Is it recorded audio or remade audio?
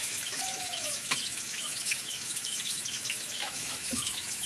remade